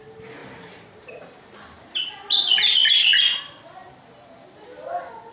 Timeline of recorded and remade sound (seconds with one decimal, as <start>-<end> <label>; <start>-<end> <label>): 0.0-5.3 recorded